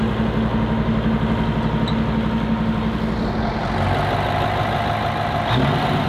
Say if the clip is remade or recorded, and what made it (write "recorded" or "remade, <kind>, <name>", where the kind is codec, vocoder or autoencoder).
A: recorded